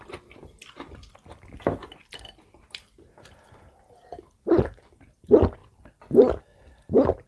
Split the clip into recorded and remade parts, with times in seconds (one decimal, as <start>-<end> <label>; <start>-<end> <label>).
0.0-7.3 recorded